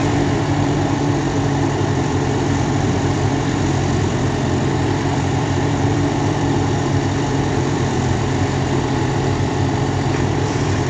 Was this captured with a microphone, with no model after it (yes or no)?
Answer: no